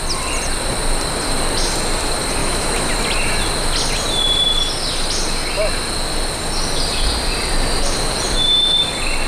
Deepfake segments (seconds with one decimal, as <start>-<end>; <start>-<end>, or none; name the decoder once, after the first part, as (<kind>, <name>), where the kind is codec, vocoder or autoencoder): 2.4-2.9 (autoencoder, DAC-VAE)

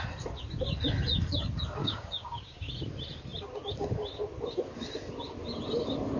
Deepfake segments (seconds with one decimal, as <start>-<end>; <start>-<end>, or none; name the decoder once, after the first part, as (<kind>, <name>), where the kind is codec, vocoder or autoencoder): 1.8-2.7 (codec, DAC)

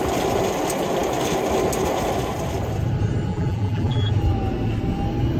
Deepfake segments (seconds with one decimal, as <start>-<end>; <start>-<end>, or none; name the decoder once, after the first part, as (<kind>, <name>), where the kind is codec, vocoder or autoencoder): 3.3-4.1 (vocoder, BigVGAN v2)

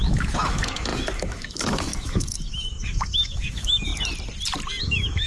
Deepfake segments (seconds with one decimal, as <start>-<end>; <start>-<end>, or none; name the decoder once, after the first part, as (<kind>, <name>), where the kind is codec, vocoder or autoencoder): 0.0-3.9 (autoencoder, DAC-VAE); 4.8-5.3

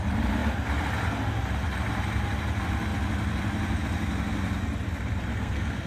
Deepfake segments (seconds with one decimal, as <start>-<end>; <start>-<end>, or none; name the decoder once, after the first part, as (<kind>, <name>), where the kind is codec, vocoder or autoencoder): 5.3-5.9 (codec, SNAC)

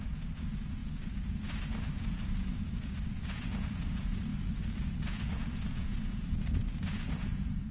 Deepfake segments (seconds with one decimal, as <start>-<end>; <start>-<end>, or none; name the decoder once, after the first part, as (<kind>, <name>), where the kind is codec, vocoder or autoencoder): 0.0-4.3 (vocoder, Vocos); 4.8-7.7

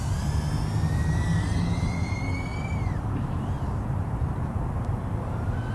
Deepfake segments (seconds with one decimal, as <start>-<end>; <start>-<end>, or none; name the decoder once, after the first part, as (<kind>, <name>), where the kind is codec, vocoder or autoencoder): 1.0-1.6 (vocoder, BigVGAN v2); 2.5-5.7